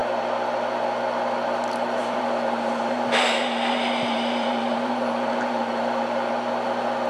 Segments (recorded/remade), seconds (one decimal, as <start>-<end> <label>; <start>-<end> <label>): 0.0-2.0 recorded; 2.0-6.3 remade; 6.3-7.1 recorded